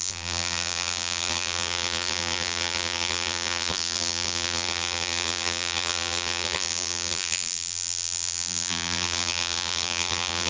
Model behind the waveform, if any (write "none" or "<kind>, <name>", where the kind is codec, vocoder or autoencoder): vocoder, BigVGAN v2